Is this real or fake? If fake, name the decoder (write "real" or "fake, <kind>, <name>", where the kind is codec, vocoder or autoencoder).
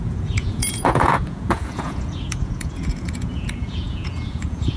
fake, vocoder, Vocos